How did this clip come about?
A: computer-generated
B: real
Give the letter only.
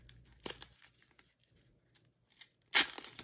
B